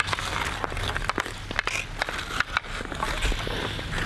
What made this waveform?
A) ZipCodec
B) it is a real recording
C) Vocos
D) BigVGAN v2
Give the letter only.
B